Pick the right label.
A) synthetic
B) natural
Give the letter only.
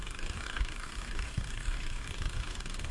A